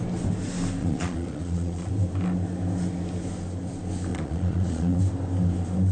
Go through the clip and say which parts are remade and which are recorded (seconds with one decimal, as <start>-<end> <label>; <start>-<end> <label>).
0.0-0.8 recorded; 0.8-1.9 remade; 1.9-4.1 recorded; 4.1-5.0 remade; 5.0-5.9 recorded